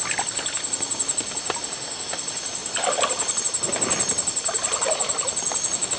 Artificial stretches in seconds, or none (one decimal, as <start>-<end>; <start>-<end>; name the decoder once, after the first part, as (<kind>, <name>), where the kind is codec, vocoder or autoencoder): none